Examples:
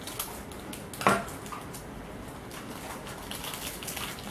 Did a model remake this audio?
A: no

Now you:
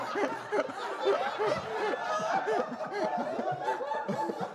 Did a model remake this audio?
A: no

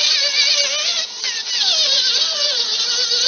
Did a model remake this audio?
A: no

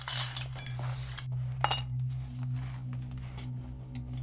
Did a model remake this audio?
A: no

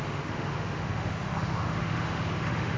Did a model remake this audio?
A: yes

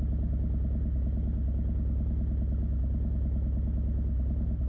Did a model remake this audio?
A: no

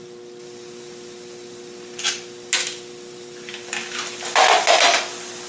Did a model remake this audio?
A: no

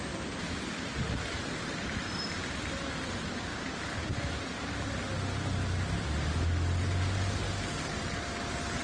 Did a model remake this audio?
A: no